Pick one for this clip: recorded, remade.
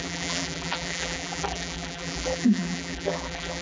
remade